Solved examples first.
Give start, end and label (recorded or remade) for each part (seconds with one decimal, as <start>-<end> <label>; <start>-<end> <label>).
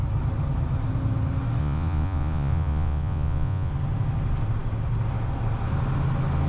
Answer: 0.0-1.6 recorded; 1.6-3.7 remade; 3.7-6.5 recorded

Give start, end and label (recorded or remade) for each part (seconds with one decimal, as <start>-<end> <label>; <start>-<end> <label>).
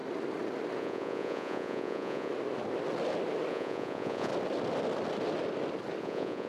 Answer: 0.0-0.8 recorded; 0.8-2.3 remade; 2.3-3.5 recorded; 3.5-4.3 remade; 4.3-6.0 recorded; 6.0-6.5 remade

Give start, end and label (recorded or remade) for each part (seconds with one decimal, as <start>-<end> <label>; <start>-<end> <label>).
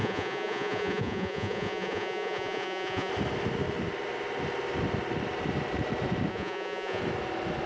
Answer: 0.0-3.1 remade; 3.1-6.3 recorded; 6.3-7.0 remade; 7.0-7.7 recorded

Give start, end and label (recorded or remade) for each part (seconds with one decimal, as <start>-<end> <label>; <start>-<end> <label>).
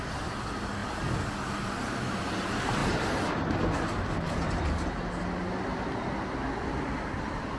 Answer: 0.0-7.6 recorded